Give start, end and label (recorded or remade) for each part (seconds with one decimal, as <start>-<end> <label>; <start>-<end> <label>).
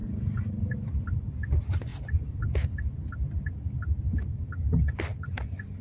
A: 0.0-1.5 remade; 1.5-1.9 recorded; 1.9-2.4 remade; 2.4-5.8 recorded